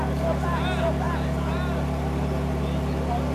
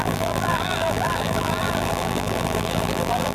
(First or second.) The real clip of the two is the first